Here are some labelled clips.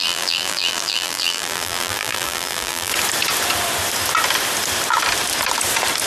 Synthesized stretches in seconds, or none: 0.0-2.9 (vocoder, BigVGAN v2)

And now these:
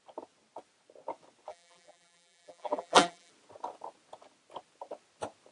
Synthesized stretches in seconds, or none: 1.5-3.3 (vocoder, BigVGAN v2)

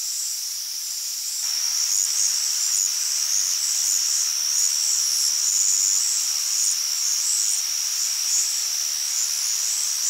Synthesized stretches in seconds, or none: 0.0-0.9 (vocoder, BigVGAN v2)

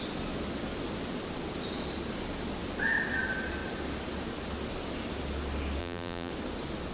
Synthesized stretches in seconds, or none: 5.8-6.3 (vocoder, BigVGAN v2)

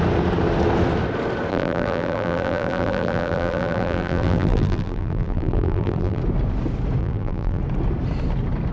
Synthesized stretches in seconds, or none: 1.5-6.2 (vocoder, BigVGAN v2); 7.0-7.6

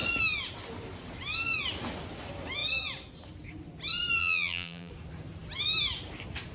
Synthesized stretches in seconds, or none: 4.2-4.9 (vocoder, BigVGAN v2)

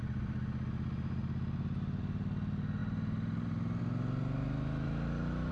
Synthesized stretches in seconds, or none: 2.8-3.8 (vocoder, BigVGAN v2)